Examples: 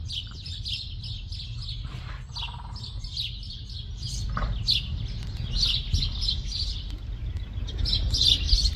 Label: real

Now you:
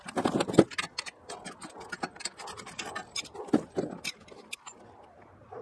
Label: real